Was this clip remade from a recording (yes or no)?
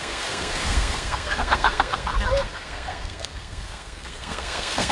yes